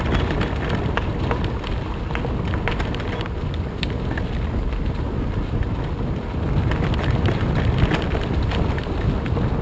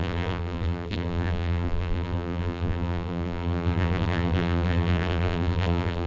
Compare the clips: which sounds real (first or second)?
first